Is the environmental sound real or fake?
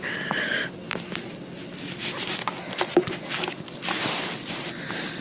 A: real